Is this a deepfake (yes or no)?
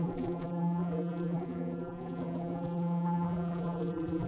yes